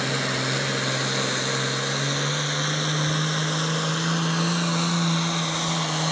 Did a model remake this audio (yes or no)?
no